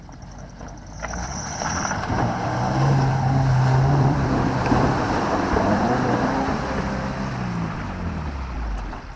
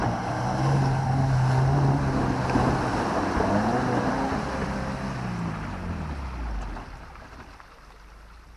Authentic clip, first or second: second